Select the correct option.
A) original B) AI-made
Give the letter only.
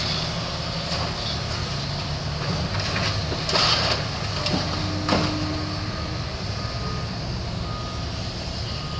A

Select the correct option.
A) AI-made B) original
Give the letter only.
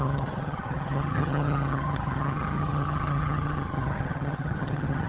A